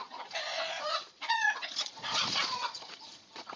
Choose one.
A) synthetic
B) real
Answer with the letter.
A